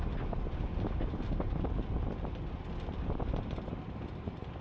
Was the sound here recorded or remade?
recorded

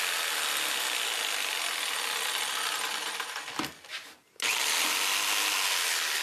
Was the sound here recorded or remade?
recorded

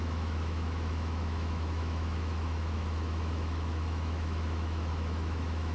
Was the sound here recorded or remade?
remade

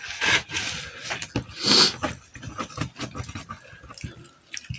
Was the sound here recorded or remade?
recorded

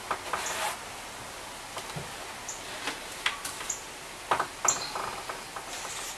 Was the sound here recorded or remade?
recorded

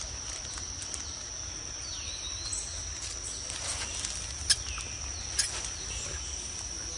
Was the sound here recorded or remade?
recorded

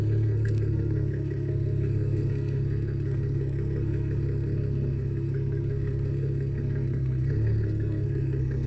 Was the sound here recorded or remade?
remade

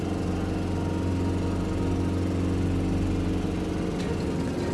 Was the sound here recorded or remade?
recorded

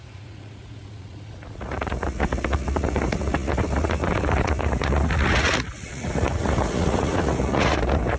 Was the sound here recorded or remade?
remade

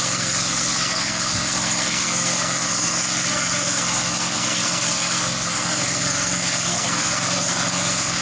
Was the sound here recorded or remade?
remade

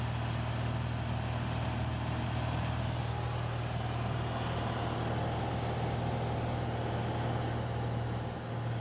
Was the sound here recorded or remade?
recorded